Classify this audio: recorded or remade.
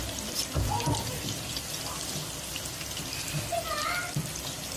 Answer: recorded